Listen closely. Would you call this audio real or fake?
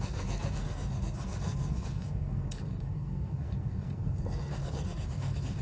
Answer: fake